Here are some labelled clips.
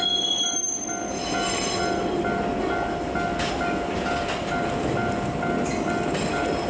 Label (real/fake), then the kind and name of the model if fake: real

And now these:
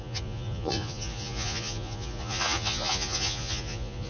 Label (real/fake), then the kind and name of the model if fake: fake, vocoder, Vocos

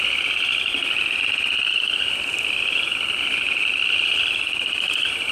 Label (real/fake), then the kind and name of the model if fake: real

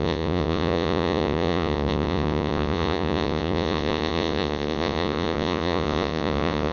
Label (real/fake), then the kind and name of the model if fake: fake, vocoder, Vocos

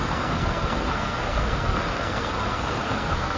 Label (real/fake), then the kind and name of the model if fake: fake, codec, SNAC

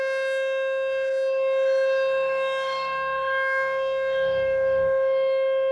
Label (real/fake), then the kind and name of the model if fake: fake, autoencoder, DAC-VAE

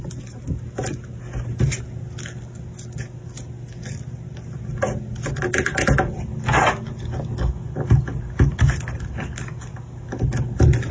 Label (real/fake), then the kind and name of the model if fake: real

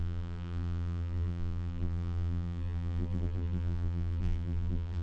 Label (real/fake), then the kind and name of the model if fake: fake, vocoder, BigVGAN v2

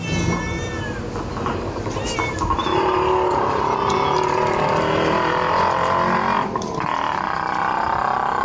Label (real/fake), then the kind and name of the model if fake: real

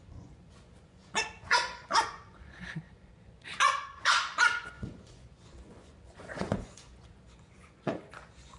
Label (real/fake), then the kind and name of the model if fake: fake, vocoder, Vocos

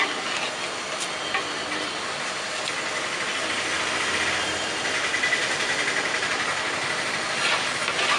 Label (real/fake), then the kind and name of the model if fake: real